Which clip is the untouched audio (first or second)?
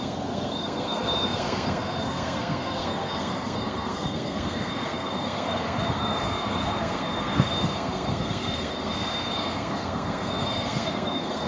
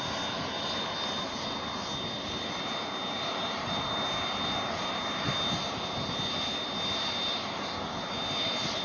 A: second